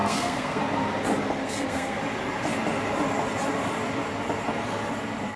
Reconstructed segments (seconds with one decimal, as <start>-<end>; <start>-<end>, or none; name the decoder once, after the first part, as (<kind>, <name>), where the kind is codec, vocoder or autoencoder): 0.0-0.6 (codec, SNAC); 1.4-2.0

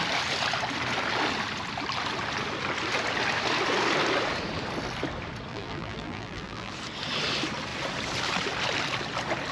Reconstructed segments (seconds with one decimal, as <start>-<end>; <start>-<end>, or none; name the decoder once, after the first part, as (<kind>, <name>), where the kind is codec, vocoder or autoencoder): 5.5-6.7 (vocoder, BigVGAN v2)

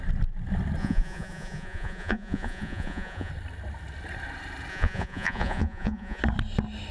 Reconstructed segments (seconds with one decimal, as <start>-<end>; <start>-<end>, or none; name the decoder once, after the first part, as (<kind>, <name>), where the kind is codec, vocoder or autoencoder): 0.8-3.3 (vocoder, Vocos); 4.7-6.2

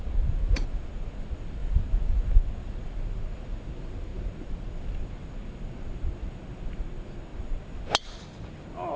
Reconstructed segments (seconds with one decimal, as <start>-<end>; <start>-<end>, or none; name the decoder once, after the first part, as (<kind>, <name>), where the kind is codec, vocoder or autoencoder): none

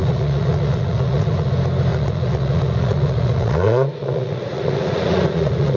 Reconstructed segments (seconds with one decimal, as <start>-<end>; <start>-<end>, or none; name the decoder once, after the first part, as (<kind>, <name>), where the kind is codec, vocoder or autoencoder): 0.0-1.5 (vocoder, Vocos); 1.9-5.8

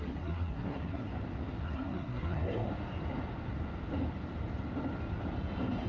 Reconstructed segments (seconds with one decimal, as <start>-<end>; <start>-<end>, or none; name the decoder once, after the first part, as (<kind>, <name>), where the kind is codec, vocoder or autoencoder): 0.0-1.1 (codec, SNAC); 1.6-2.7

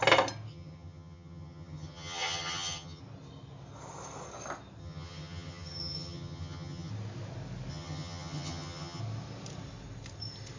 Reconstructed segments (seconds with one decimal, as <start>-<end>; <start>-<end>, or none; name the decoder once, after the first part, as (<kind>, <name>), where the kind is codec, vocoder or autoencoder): 0.5-3.0 (vocoder, HiFi-GAN); 4.8-6.9; 7.7-9.0

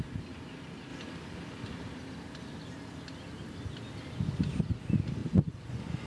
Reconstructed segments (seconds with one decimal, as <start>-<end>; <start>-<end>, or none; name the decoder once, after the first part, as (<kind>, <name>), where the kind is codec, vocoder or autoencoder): 5.2-6.1 (vocoder, Vocos)